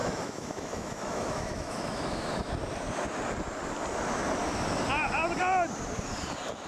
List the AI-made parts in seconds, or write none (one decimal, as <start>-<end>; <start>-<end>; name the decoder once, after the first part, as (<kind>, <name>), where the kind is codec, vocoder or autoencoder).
0.0-2.5 (autoencoder, DAC-VAE)